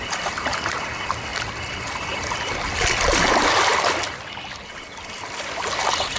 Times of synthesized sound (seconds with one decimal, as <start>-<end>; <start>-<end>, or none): none